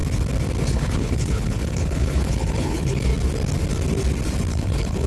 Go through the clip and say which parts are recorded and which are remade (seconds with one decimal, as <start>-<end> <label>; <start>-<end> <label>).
0.0-0.7 recorded; 0.7-3.1 remade; 3.1-4.5 recorded; 4.5-5.1 remade

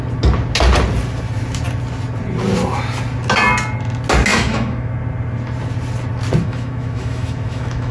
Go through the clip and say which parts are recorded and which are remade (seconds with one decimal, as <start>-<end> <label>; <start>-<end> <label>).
0.0-4.3 recorded; 4.3-4.9 remade; 4.9-6.4 recorded; 6.4-7.9 remade

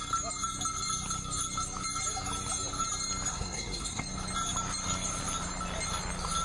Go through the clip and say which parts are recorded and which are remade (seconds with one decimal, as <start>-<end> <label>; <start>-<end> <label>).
0.0-3.3 recorded; 3.3-4.0 remade; 4.0-6.4 recorded

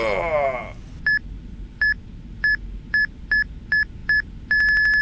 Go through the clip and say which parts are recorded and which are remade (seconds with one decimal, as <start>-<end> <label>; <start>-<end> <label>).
0.0-5.0 recorded

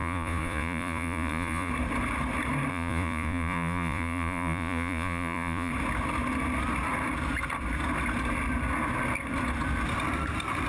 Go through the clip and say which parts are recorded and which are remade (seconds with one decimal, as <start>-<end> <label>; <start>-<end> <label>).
0.0-1.7 remade; 1.7-2.7 recorded; 2.7-5.7 remade; 5.7-10.7 recorded